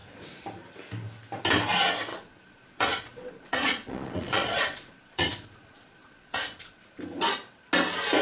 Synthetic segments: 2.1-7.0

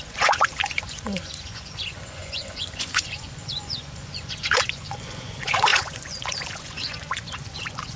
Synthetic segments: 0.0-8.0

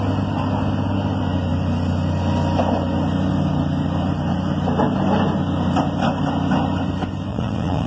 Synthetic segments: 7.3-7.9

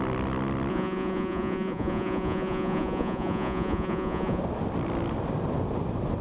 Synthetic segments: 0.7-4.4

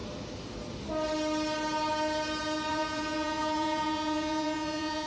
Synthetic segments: 2.7-5.1

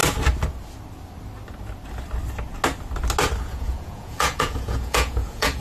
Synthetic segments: 3.4-5.6